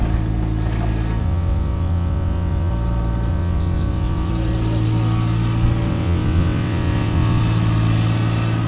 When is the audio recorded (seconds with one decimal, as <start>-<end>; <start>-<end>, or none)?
0.0-1.2; 2.7-3.3; 4.3-5.9; 7.4-8.7